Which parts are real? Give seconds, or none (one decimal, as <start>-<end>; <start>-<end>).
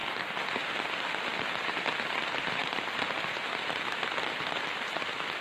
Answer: 0.0-5.4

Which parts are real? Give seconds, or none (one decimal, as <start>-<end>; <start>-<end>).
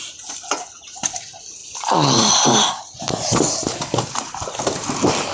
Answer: 0.0-1.6; 2.3-3.6; 4.2-5.3